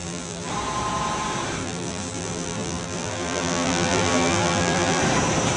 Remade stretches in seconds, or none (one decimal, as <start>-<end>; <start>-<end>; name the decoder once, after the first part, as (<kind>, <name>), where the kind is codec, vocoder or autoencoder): 0.0-0.5 (vocoder, BigVGAN v2); 1.6-5.0